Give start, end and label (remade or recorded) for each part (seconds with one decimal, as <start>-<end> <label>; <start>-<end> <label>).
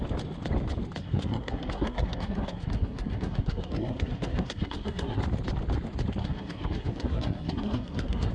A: 0.0-1.0 recorded; 1.0-5.2 remade; 5.2-6.2 recorded; 6.2-8.3 remade